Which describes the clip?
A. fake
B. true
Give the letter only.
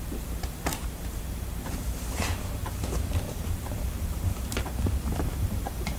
A